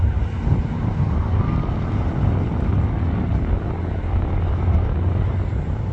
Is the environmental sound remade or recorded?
recorded